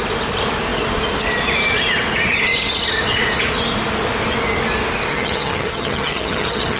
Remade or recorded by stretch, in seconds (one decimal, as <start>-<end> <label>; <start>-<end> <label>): 0.0-5.1 recorded; 5.1-6.8 remade